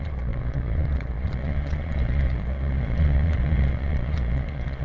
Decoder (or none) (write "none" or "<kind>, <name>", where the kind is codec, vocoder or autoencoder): vocoder, Vocos